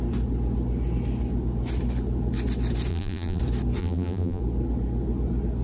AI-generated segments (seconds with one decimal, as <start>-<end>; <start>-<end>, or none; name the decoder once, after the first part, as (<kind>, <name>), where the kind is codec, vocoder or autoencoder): 2.9-3.4 (vocoder, BigVGAN v2); 3.8-4.4